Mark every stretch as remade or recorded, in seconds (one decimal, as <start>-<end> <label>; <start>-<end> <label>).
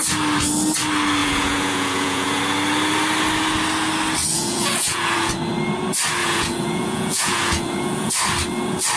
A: 0.0-1.2 recorded; 1.2-2.4 remade; 2.4-4.2 recorded; 4.2-5.3 remade; 5.3-6.2 recorded; 6.2-8.1 remade; 8.1-9.0 recorded